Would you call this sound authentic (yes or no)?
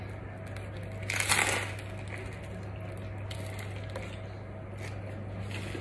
yes